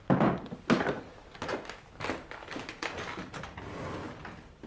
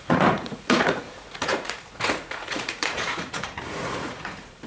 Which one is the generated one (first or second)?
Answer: second